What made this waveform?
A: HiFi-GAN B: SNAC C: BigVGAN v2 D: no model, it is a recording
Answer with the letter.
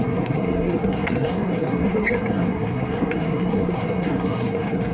B